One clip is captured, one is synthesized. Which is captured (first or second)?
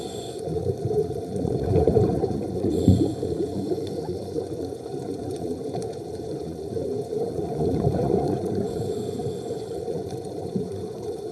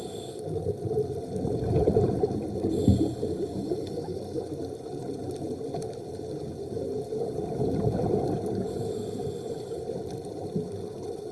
second